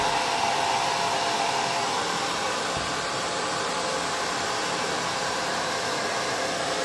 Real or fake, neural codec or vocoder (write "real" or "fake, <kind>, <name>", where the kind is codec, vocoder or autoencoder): real